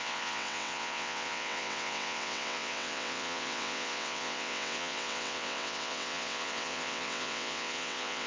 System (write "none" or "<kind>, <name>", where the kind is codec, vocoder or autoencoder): vocoder, WaveNeXt